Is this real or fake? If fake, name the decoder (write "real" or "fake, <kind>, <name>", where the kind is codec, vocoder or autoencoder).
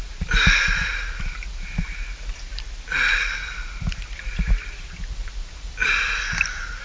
real